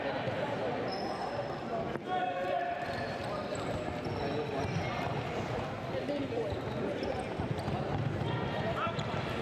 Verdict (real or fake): real